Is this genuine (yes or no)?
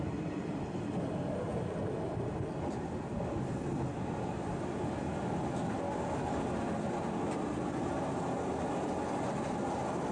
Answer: yes